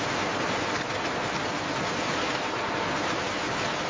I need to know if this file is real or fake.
real